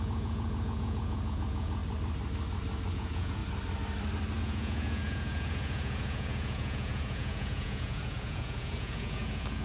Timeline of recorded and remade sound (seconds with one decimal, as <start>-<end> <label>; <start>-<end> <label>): 0.0-1.8 remade; 1.8-2.9 recorded; 2.9-3.4 remade; 3.4-4.4 recorded; 4.4-9.6 remade